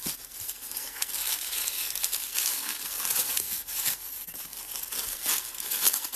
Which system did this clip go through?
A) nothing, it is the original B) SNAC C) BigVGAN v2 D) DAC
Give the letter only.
B